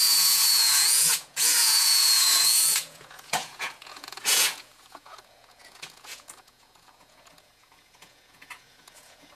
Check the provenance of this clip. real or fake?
fake